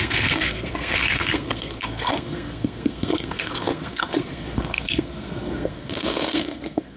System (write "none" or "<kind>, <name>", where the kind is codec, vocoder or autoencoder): codec, SNAC